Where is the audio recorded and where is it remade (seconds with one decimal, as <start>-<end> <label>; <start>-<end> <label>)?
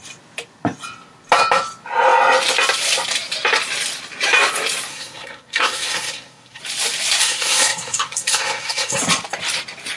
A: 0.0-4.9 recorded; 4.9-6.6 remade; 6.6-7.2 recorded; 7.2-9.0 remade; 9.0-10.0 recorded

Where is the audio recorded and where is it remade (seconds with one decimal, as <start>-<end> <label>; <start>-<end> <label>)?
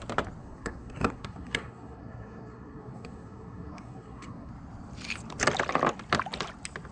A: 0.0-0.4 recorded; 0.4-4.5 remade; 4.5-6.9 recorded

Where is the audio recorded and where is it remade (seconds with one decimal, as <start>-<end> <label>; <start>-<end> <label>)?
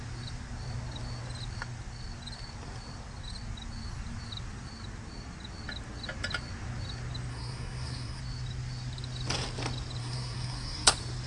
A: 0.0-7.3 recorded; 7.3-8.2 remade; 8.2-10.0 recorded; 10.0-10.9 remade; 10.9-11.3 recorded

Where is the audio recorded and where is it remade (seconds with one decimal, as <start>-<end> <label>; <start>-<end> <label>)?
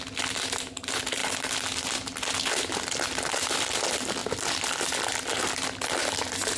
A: 0.0-6.6 recorded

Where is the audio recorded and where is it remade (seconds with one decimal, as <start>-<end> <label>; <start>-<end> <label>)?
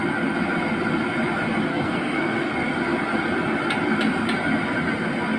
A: 0.0-1.7 recorded; 1.7-2.5 remade; 2.5-5.4 recorded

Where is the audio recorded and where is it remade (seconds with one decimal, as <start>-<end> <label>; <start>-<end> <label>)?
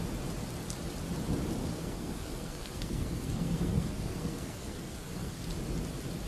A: 0.0-1.6 recorded; 1.6-5.4 remade; 5.4-6.3 recorded